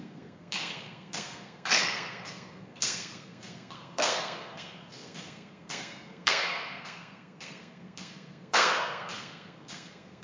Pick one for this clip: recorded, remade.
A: remade